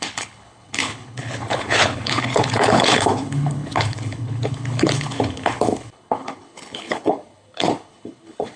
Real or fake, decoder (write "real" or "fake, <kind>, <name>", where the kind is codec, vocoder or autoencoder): fake, codec, HILCodec